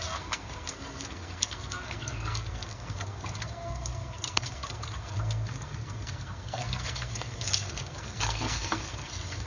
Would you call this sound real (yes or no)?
no